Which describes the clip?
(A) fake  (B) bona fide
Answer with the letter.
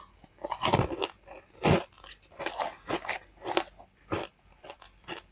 B